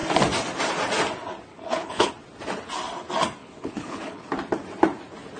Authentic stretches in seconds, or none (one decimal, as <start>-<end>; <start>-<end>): 0.0-1.5; 2.1-3.4; 4.3-5.4